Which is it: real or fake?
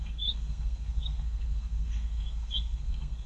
fake